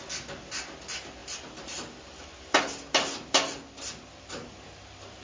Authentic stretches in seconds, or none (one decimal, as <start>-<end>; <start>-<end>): 0.0-5.2